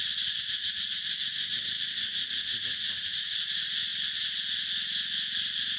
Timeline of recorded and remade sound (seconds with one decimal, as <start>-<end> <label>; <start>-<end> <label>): 0.0-2.1 remade; 2.1-3.0 recorded; 3.0-3.9 remade; 3.9-5.8 recorded